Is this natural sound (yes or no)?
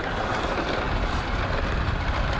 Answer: yes